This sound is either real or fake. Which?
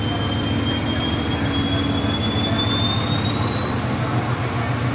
real